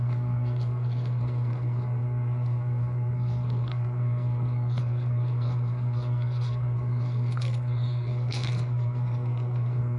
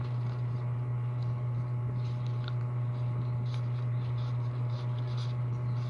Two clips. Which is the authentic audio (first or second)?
second